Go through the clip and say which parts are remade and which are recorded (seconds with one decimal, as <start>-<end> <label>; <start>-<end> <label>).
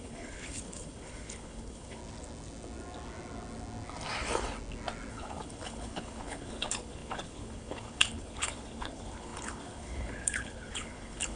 0.0-2.0 remade; 2.0-5.1 recorded; 5.1-11.4 remade